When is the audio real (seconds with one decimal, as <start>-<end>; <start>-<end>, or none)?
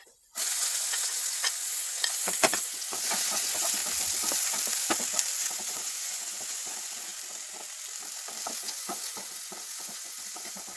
3.8-5.4; 7.1-8.5